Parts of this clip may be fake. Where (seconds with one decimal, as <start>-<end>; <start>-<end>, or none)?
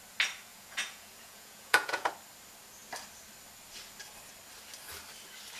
0.5-2.1